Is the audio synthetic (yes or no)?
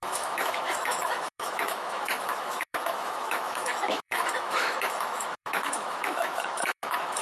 yes